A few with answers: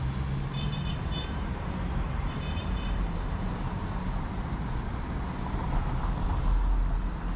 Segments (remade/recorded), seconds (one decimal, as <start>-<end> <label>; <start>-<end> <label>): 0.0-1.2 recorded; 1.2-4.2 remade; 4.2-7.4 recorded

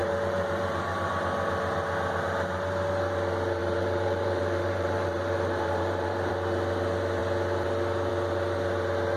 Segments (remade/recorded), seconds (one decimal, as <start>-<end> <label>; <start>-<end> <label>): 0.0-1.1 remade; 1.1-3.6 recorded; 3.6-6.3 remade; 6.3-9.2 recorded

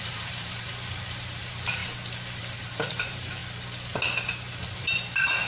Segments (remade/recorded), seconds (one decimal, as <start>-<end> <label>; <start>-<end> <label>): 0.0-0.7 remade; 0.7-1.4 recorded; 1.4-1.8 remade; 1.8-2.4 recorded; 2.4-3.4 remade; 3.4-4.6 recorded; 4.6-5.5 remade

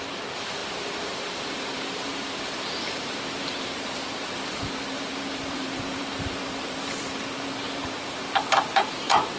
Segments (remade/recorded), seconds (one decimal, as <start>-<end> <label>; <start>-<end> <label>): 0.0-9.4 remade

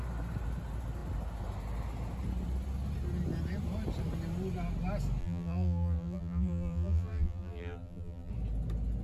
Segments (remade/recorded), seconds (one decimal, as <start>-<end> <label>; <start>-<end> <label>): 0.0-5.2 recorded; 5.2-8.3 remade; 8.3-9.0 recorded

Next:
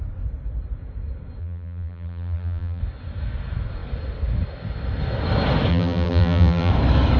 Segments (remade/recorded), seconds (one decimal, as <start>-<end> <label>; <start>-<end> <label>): 0.0-1.4 recorded; 1.4-2.8 remade; 2.8-5.7 recorded; 5.7-6.7 remade; 6.7-7.2 recorded

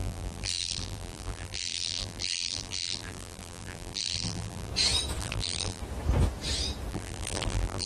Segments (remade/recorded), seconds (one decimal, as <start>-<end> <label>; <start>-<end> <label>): 0.0-4.7 remade; 4.7-5.2 recorded; 5.2-5.8 remade; 5.8-6.9 recorded; 6.9-7.9 remade

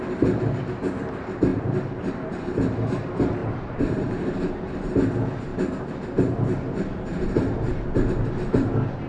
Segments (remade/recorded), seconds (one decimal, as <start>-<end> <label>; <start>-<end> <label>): 0.0-1.5 recorded; 1.5-2.1 remade; 2.1-3.4 recorded; 3.4-4.5 remade; 4.5-5.5 recorded; 5.5-9.1 remade